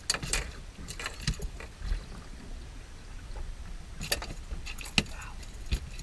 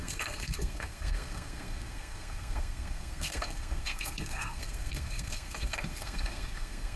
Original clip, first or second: first